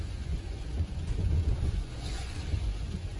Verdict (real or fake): fake